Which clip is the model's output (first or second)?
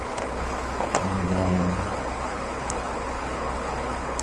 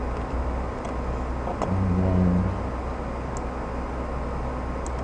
first